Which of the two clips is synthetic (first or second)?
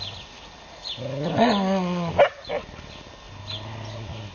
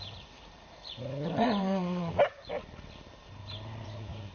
second